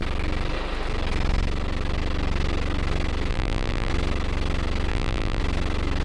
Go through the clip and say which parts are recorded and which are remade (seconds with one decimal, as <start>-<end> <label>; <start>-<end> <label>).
0.0-3.3 recorded; 3.3-3.9 remade; 3.9-4.9 recorded; 4.9-5.4 remade; 5.4-6.0 recorded